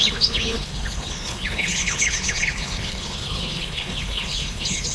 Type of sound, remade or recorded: remade